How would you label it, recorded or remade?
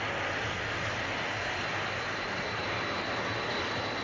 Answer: recorded